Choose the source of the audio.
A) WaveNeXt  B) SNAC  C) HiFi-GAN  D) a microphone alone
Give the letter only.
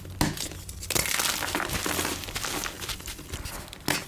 D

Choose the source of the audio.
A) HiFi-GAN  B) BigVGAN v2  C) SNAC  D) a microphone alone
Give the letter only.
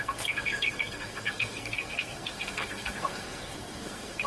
C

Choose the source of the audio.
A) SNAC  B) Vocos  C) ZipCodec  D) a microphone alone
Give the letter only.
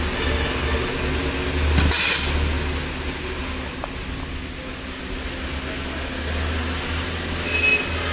D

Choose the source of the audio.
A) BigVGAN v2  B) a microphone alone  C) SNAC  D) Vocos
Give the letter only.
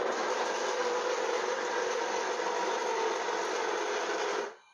B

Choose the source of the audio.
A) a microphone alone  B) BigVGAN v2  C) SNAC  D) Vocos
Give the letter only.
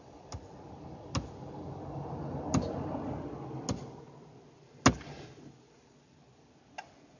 A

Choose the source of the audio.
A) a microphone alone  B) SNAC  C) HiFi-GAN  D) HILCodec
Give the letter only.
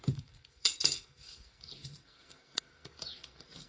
B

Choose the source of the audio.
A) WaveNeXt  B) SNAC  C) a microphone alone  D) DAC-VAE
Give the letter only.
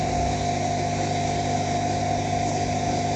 C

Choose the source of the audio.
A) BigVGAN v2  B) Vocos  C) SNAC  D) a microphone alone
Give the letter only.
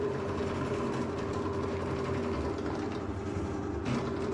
D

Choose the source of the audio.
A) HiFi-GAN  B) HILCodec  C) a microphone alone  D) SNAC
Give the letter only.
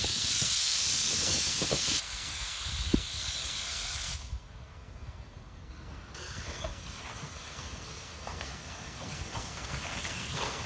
D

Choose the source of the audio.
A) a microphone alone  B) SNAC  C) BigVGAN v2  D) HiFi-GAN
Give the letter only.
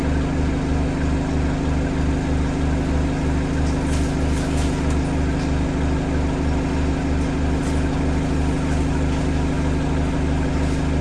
A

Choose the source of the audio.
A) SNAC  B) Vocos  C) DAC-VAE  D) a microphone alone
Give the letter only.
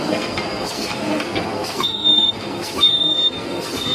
A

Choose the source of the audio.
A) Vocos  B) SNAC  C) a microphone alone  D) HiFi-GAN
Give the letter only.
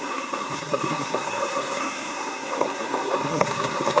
B